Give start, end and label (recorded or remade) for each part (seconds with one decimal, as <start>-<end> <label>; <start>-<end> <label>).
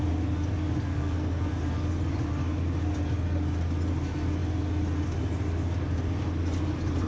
0.0-0.9 recorded; 0.9-1.4 remade; 1.4-7.1 recorded